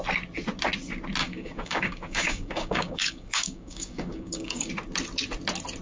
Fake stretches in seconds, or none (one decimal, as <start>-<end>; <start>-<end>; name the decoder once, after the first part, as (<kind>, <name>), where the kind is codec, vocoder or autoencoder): 1.2-4.7 (codec, DAC)